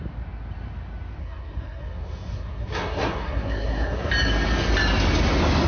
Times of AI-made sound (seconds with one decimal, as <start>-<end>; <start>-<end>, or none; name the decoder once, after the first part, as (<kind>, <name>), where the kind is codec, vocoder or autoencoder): 1.2-4.1 (codec, SNAC)